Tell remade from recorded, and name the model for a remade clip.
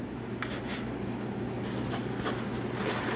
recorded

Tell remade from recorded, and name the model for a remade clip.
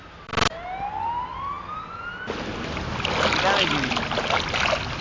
recorded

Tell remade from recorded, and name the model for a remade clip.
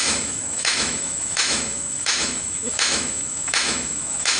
remade, autoencoder, DAC-VAE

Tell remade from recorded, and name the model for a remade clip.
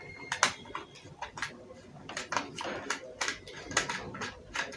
recorded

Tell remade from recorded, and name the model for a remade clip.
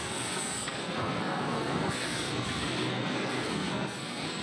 remade, codec, SNAC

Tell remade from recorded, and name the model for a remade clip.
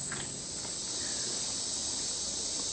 recorded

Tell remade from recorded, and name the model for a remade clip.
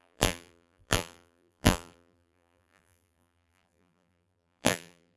remade, vocoder, BigVGAN v2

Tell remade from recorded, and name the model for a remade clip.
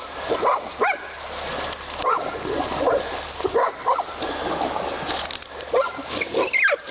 recorded